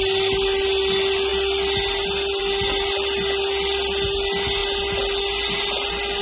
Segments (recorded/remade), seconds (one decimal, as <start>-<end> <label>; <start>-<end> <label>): 0.0-6.2 recorded